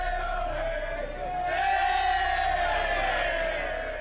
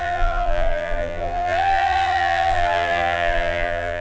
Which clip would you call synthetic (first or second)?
second